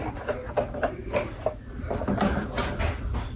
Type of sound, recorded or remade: recorded